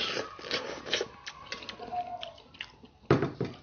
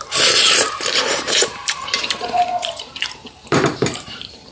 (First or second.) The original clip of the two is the first